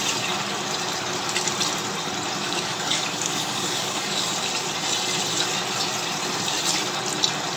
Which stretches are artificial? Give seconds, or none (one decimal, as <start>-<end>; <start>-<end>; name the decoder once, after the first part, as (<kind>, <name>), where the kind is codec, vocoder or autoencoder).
2.4-4.2 (codec, DAC)